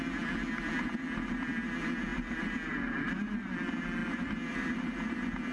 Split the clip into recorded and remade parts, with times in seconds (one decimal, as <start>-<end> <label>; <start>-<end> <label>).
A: 0.0-2.1 recorded; 2.1-3.0 remade; 3.0-4.0 recorded; 4.0-5.1 remade; 5.1-5.5 recorded